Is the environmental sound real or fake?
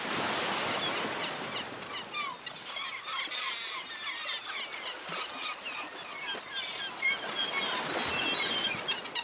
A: real